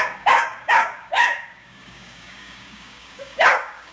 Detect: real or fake fake